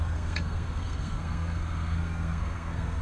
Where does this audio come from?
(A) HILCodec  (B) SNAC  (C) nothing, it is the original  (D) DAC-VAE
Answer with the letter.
B